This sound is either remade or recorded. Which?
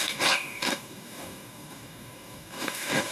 remade